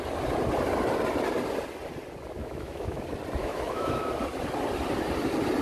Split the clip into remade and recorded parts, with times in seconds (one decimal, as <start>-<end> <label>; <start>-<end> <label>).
0.0-2.4 recorded; 2.4-3.0 remade; 3.0-3.4 recorded; 3.4-4.1 remade; 4.1-5.6 recorded